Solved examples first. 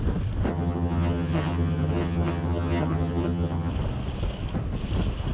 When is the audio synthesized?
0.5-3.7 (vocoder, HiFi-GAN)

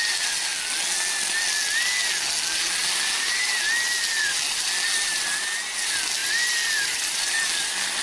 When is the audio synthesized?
6.2-8.0 (vocoder, BigVGAN v2)

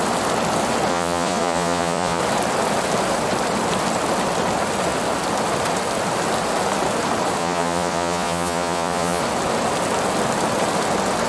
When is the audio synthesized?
0.9-2.2 (vocoder, Vocos); 7.4-9.2

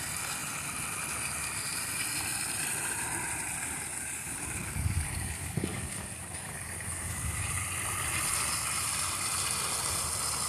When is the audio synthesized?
3.9-7.5 (codec, DAC)

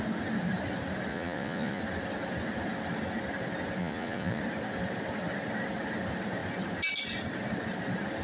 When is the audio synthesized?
1.1-1.8 (vocoder, Vocos); 3.8-4.4

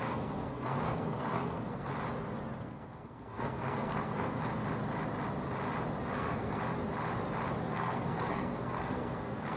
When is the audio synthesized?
0.0-1.9 (codec, SNAC); 2.6-4.5; 6.1-6.6; 7.6-9.6

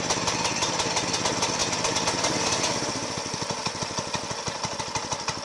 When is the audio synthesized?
none